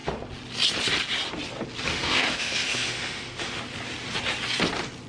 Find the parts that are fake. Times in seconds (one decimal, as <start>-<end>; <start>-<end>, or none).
1.9-3.6